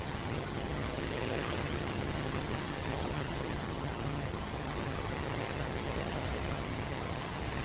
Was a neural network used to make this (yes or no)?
yes